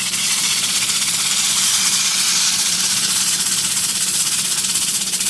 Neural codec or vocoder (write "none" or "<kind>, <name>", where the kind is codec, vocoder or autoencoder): vocoder, Vocos